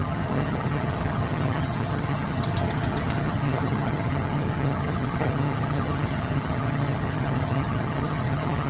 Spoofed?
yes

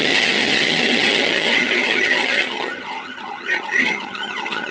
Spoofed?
yes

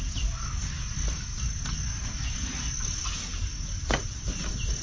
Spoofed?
no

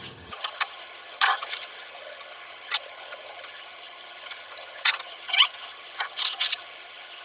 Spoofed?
yes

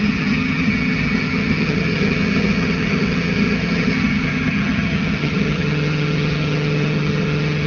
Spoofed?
yes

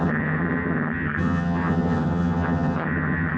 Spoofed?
yes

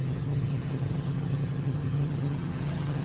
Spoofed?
yes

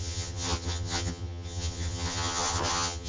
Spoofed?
yes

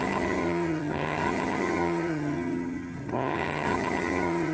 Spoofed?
yes